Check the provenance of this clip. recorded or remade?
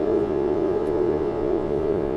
remade